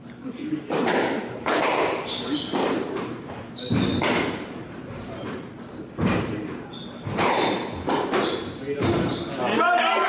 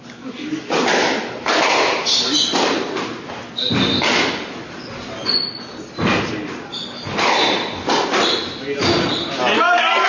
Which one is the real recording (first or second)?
second